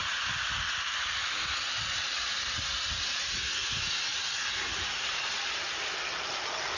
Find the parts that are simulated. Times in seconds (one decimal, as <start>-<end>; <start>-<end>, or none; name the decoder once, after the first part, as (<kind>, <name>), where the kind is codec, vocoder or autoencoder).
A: 4.1-5.4 (vocoder, Vocos)